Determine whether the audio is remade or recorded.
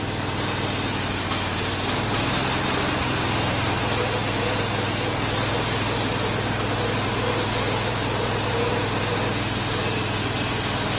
recorded